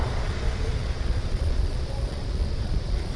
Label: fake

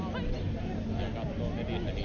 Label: real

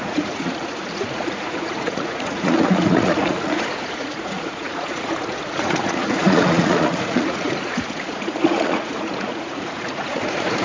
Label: fake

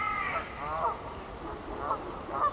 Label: real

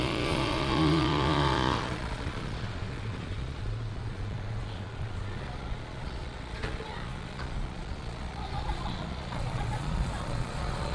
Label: fake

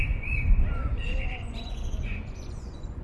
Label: fake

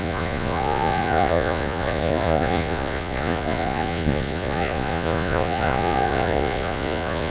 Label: fake